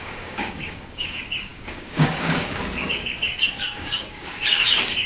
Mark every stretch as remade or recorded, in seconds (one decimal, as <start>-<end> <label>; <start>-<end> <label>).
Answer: 0.0-5.1 remade